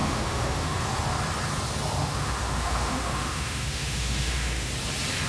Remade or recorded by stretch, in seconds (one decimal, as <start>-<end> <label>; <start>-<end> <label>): 0.0-0.8 remade; 0.8-2.0 recorded; 2.0-4.7 remade; 4.7-5.3 recorded